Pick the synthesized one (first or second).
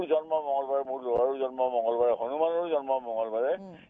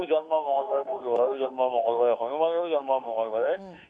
second